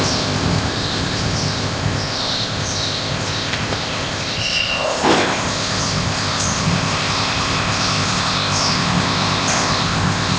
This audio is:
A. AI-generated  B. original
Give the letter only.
A